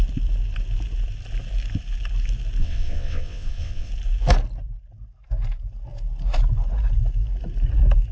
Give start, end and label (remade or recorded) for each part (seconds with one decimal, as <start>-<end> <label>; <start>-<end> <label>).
0.0-2.6 recorded; 2.6-3.9 remade; 3.9-8.1 recorded